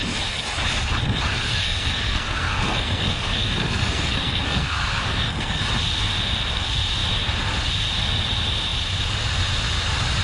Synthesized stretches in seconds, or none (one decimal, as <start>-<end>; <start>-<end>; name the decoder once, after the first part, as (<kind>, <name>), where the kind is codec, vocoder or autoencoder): 1.5-5.6 (codec, SNAC)